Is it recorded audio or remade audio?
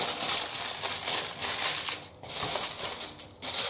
recorded